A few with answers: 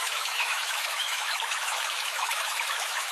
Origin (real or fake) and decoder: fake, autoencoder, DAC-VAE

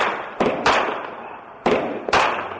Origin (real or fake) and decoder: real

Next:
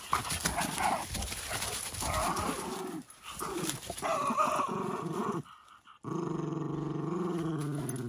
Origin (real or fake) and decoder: real